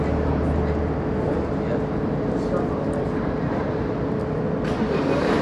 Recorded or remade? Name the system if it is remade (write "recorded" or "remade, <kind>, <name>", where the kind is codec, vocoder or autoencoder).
recorded